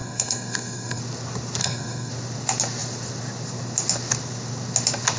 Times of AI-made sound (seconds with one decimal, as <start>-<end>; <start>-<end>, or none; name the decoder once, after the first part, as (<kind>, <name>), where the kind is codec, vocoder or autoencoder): 0.0-1.0 (codec, SNAC); 1.6-2.1